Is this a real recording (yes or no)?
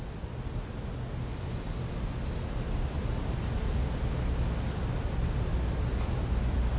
yes